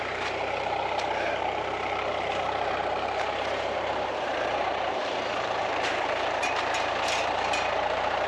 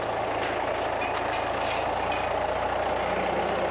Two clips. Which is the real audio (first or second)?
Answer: second